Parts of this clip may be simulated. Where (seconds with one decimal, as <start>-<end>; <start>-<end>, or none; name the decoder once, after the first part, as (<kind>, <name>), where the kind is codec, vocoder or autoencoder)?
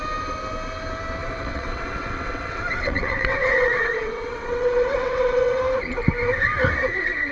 1.2-5.6 (vocoder, WaveNeXt)